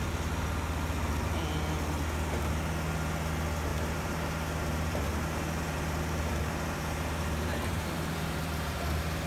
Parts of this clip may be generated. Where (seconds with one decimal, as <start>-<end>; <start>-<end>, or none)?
3.7-8.8